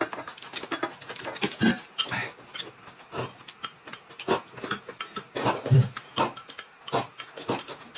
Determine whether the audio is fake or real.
real